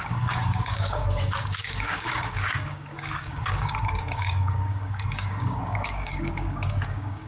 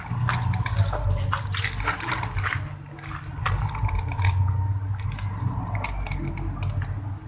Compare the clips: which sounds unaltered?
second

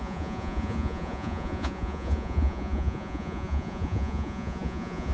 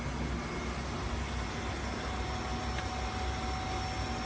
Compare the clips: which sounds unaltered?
second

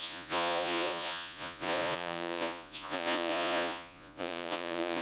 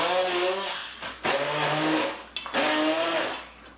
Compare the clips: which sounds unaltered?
second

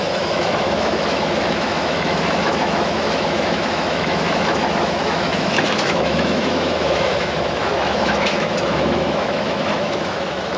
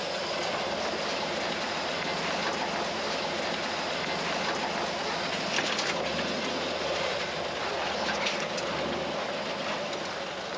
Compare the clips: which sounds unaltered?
second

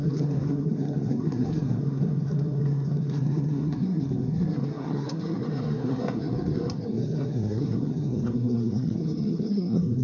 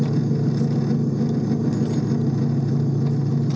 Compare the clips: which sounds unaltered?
second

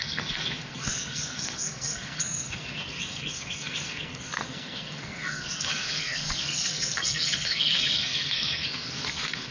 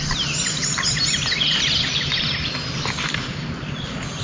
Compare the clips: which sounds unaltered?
second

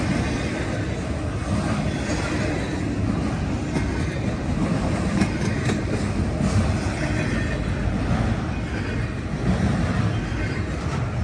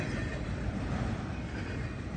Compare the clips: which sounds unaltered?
first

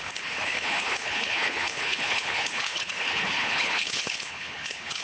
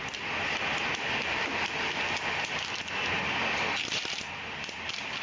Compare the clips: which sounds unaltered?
second